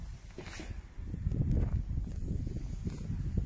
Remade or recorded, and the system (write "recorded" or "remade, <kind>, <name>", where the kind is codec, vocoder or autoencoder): recorded